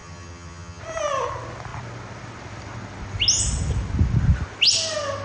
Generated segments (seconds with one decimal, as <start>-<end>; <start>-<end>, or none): 0.0-0.8